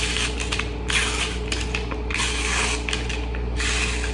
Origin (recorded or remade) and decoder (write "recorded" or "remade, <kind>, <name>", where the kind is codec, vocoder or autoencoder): recorded